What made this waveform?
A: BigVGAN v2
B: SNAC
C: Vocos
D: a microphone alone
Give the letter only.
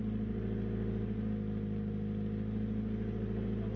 D